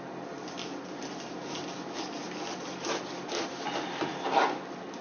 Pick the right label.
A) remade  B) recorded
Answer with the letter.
B